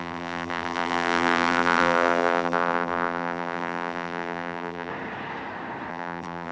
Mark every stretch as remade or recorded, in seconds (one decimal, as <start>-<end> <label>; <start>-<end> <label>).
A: 0.0-4.9 remade; 4.9-5.9 recorded; 5.9-6.5 remade